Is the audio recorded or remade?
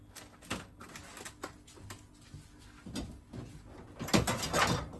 recorded